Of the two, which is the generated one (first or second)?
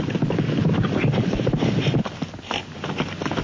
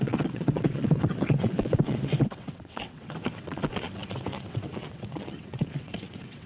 second